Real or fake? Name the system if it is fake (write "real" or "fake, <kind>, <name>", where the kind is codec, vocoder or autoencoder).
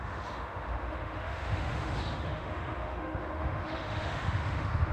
fake, autoencoder, DAC-VAE